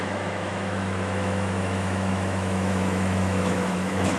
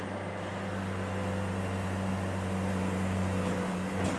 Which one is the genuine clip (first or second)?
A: second